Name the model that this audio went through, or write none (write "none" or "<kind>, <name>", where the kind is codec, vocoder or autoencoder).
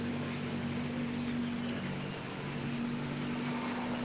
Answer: none